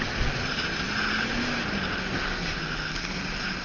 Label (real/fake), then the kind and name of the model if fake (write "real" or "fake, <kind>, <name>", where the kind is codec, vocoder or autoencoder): real